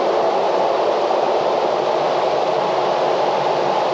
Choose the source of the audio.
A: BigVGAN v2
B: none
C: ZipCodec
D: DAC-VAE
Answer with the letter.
B